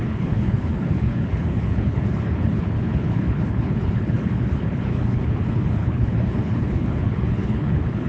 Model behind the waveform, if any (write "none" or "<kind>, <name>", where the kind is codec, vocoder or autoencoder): codec, HILCodec